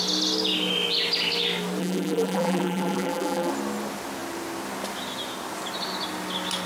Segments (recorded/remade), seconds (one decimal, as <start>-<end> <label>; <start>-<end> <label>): 0.0-1.8 recorded; 1.8-3.5 remade; 3.5-6.7 recorded